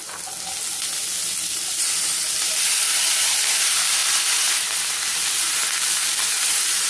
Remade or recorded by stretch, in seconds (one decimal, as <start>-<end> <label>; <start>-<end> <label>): 0.0-2.6 recorded; 2.6-5.6 remade; 5.6-6.4 recorded; 6.4-6.9 remade